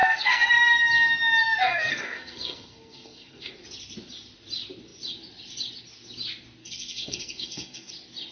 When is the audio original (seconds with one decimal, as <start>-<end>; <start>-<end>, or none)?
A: 0.5-1.4; 3.5-6.6; 7.9-8.3